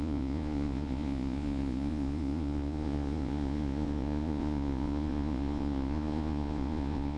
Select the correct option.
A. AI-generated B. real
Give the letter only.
A